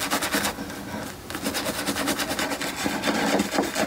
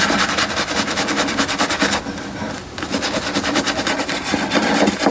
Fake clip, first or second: second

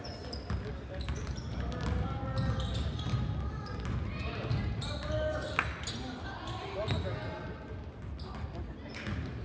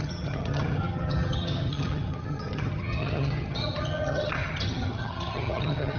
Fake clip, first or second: second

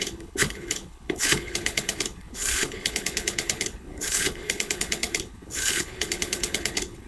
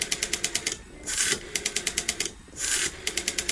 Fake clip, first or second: first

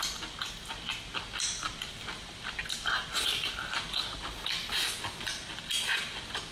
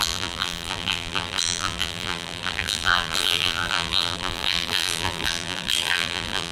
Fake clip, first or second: second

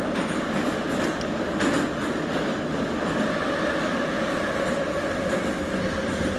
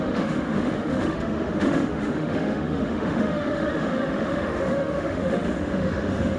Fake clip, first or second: second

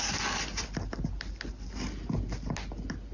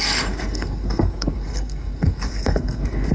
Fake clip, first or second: second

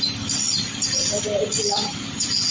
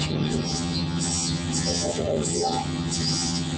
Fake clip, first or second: second